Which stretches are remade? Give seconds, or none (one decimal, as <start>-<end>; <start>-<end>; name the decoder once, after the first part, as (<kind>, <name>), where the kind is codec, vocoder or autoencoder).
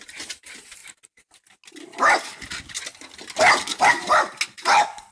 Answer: none